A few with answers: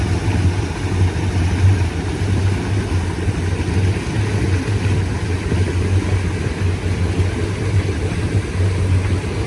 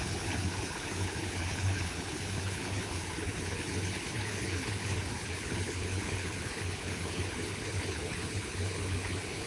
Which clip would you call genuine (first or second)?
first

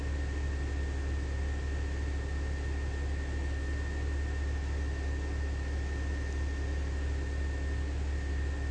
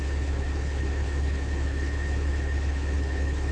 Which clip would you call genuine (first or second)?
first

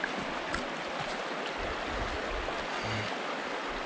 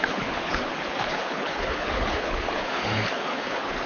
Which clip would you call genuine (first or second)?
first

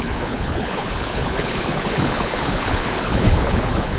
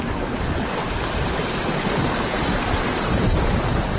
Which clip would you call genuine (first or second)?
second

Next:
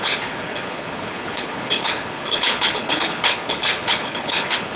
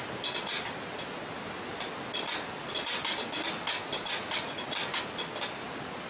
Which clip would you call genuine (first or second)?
second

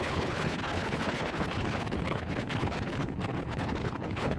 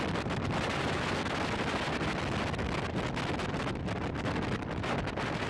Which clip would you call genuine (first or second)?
second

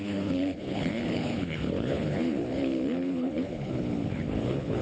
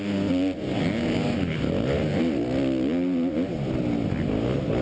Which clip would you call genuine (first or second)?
second